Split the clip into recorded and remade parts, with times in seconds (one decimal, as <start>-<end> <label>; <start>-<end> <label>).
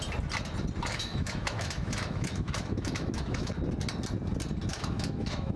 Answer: 0.0-0.9 recorded; 0.9-3.5 remade; 3.5-4.7 recorded; 4.7-5.6 remade